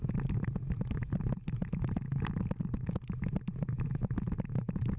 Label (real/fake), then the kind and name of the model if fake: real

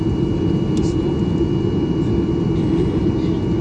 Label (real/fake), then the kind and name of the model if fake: real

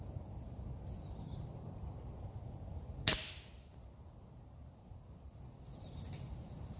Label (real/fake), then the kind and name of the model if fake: real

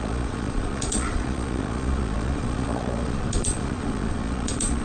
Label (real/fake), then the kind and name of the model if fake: fake, vocoder, Vocos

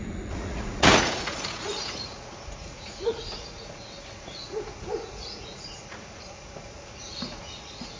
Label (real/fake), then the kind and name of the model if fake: fake, vocoder, Vocos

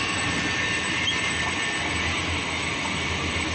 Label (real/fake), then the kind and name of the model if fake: real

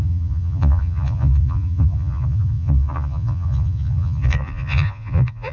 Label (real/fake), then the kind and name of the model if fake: fake, vocoder, Vocos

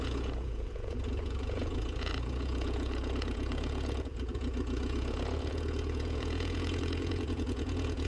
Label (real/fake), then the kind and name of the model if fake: fake, vocoder, Vocos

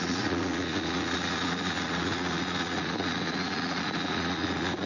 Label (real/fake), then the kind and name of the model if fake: fake, vocoder, Vocos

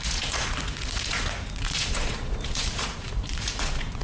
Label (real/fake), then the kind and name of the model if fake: fake, vocoder, Vocos